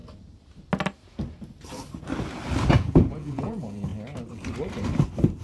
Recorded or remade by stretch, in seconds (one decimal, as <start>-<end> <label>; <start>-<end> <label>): 0.0-2.7 recorded; 2.7-3.9 remade; 3.9-5.4 recorded